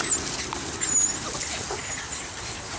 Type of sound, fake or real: real